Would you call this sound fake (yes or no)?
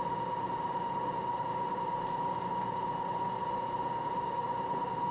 no